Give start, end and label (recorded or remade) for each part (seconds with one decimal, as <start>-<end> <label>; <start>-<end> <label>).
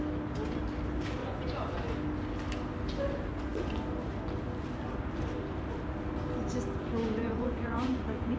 0.0-1.2 recorded; 1.2-1.8 remade; 1.8-7.2 recorded; 7.2-8.4 remade